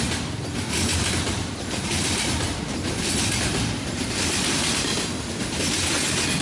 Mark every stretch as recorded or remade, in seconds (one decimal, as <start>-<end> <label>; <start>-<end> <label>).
0.0-0.9 recorded; 0.9-4.7 remade; 4.7-6.4 recorded